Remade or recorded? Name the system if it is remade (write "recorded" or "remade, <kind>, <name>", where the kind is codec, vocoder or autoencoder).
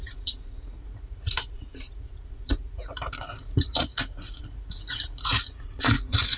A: remade, vocoder, Vocos